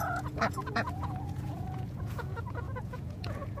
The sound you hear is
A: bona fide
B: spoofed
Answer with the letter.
B